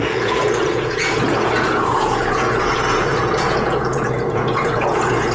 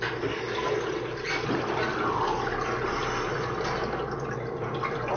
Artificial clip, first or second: first